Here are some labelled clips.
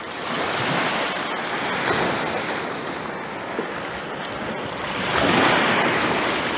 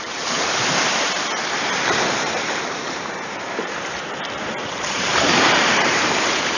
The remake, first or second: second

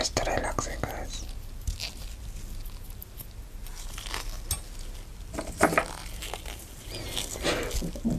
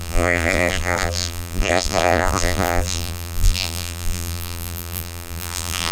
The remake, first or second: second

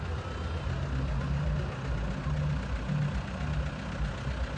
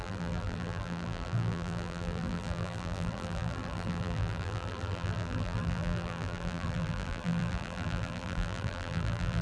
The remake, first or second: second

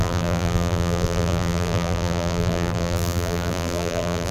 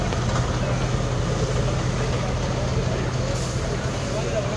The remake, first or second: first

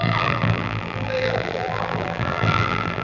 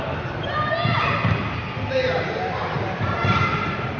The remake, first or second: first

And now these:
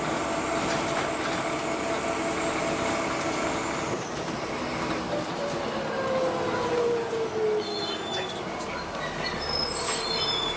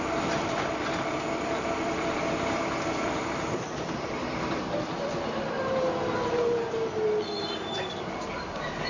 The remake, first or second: second